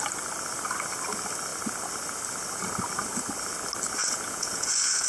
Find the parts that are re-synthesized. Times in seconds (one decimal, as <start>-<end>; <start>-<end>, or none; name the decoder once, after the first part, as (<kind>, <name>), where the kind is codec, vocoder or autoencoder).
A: 4.0-5.1 (vocoder, Vocos)